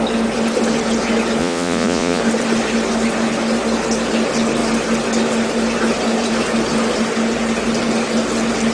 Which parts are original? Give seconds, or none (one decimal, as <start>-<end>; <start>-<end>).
0.0-1.4; 2.2-8.7